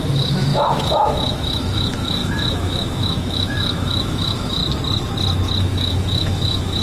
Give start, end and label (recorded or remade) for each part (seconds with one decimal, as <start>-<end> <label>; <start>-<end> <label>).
0.0-4.6 remade; 4.6-5.6 recorded; 5.6-6.8 remade